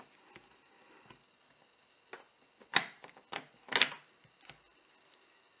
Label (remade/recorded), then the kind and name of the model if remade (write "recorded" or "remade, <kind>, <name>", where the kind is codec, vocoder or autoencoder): recorded